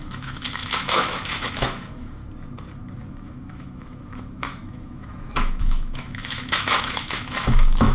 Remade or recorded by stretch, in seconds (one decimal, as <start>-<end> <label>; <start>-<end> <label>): 0.0-2.2 remade; 2.2-3.1 recorded; 3.1-7.9 remade

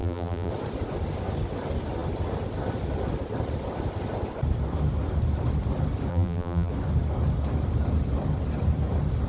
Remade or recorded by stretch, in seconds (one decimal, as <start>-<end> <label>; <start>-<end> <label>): 0.0-0.5 remade; 0.5-6.1 recorded; 6.1-6.7 remade; 6.7-9.3 recorded